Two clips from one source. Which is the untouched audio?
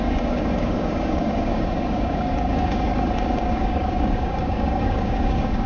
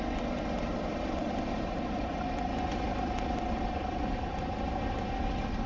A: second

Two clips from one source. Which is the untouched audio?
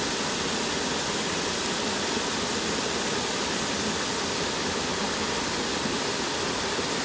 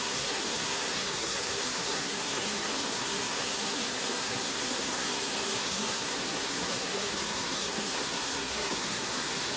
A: first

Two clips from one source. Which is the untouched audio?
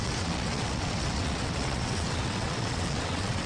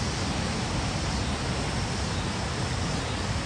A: second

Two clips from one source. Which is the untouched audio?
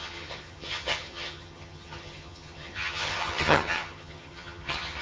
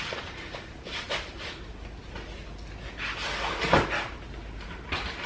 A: second